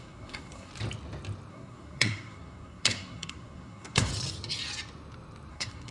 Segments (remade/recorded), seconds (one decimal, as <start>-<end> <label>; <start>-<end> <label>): 0.0-0.7 remade; 0.7-1.5 recorded; 1.5-4.1 remade; 4.1-5.5 recorded; 5.5-5.9 remade